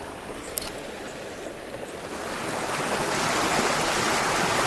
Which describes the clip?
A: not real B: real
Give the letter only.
B